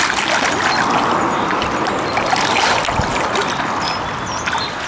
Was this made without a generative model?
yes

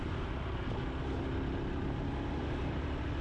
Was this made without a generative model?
yes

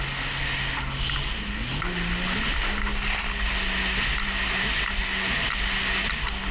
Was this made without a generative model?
yes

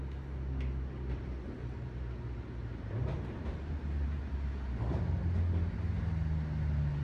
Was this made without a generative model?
yes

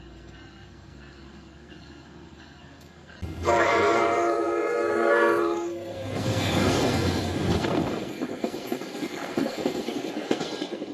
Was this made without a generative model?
no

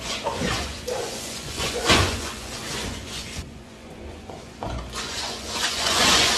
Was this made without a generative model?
no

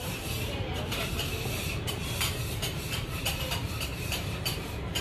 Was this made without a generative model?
no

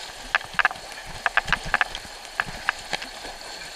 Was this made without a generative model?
yes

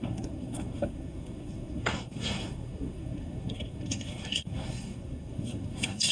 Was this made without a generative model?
no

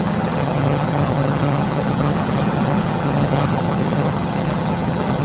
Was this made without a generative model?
no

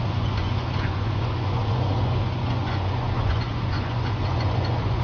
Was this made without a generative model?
no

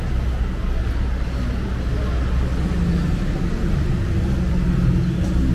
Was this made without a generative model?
yes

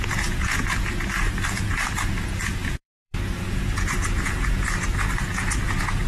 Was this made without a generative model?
no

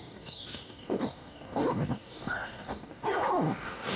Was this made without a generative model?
no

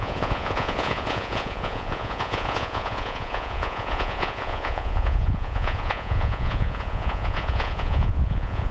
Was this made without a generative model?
no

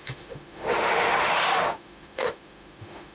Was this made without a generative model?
no